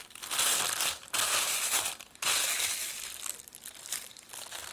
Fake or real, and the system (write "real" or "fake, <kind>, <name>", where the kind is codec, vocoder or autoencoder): real